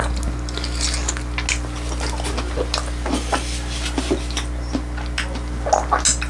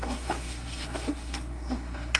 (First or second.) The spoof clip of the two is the second